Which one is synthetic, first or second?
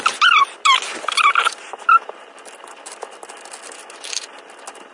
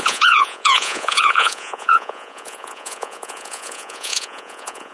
second